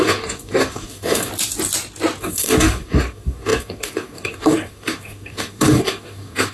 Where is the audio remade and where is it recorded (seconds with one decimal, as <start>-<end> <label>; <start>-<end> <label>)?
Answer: 0.0-1.3 remade; 1.3-2.2 recorded; 2.2-6.5 remade